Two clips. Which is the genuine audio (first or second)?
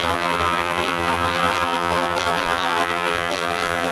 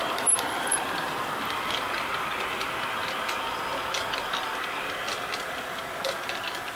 second